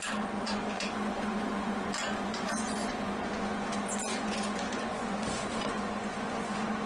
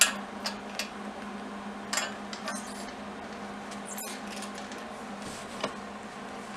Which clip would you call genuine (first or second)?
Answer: second